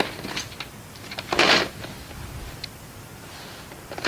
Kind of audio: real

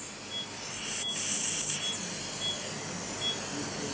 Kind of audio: real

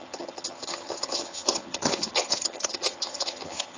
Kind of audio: fake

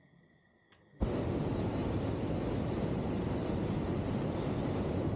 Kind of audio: real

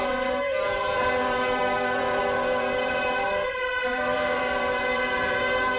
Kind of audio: fake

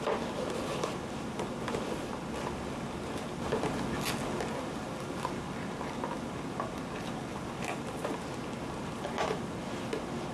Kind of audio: real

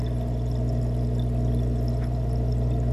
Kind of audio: real